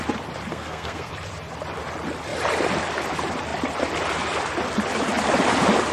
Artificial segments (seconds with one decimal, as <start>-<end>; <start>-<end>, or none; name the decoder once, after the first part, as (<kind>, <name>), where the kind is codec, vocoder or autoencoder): 0.5-1.1 (codec, SNAC)